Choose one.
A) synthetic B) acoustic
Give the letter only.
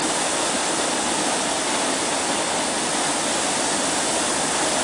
B